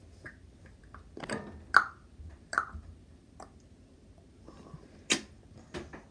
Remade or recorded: recorded